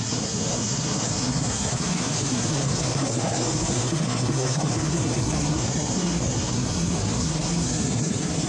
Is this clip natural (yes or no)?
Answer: no